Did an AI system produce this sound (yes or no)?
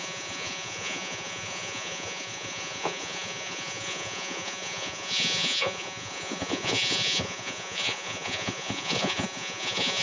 yes